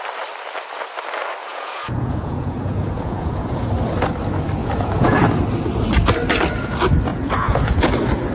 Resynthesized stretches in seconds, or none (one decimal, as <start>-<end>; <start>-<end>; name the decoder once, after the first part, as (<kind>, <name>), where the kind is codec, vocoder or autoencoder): 1.4-3.7 (vocoder, Vocos); 4.6-5.2; 7.1-7.9